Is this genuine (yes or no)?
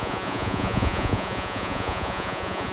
no